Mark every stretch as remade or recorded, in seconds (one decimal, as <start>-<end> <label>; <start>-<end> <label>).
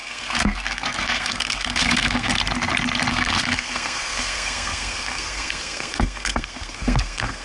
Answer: 0.0-2.3 remade; 2.3-3.1 recorded; 3.1-7.4 remade